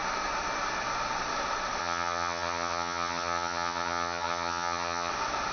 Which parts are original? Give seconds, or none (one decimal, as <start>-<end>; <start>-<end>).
0.0-1.8; 5.1-5.5